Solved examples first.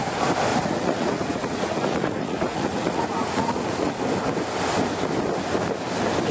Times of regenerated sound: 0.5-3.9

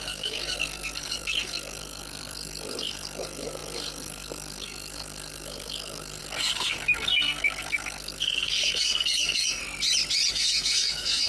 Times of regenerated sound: 0.0-9.6; 10.3-11.3

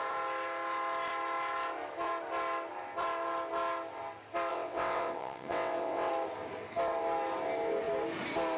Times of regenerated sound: 4.5-6.1

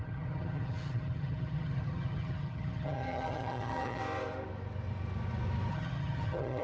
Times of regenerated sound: 0.0-4.0; 5.7-6.6

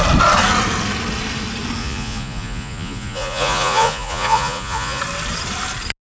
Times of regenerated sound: 1.8-5.0

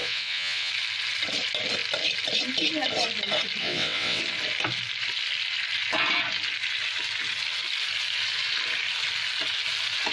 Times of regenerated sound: 0.0-0.7; 3.6-4.2

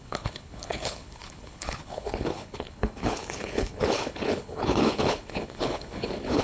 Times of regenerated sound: 0.0-6.4